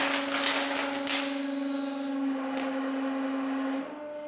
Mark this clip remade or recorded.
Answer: recorded